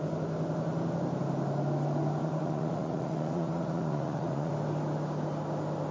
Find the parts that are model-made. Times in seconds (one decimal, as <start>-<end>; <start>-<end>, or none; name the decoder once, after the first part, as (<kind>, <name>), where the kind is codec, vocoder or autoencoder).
2.2-4.5 (vocoder, Vocos)